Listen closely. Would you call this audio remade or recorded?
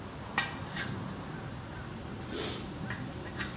recorded